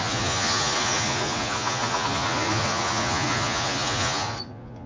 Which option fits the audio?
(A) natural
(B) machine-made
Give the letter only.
B